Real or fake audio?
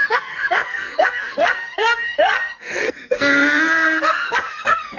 fake